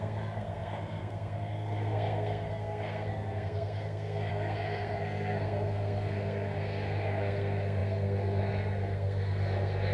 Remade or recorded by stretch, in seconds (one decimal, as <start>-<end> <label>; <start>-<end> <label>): 0.0-9.9 remade